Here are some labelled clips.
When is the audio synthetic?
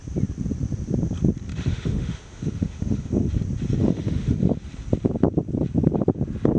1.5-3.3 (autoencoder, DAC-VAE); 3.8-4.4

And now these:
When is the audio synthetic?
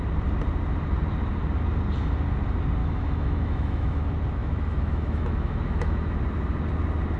2.8-4.0 (autoencoder, DAC-VAE); 4.4-6.2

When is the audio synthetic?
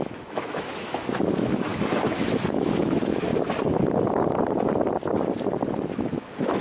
0.0-3.3 (autoencoder, DAC-VAE); 5.8-6.6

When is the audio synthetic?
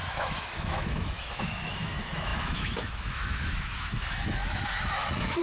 0.0-5.4 (autoencoder, DAC-VAE)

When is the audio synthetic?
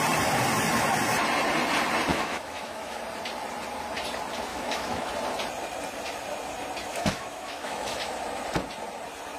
2.1-3.0 (autoencoder, DAC-VAE); 4.5-5.1; 6.9-8.1